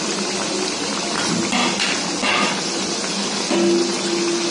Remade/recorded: recorded